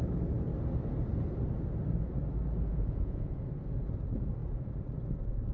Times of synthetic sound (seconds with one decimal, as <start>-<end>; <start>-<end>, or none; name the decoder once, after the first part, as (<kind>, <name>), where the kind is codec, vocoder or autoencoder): 2.7-3.4 (vocoder, Vocos)